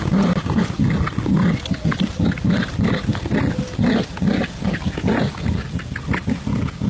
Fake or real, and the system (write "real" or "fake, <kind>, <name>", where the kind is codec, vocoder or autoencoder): real